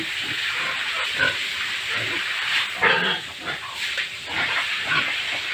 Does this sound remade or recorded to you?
remade